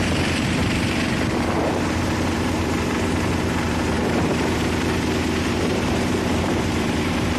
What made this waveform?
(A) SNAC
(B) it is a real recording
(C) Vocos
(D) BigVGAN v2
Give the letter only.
D